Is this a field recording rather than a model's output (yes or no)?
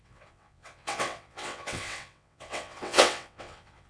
no